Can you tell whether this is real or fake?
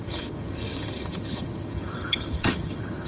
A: fake